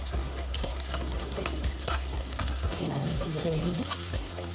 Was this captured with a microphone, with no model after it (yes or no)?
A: no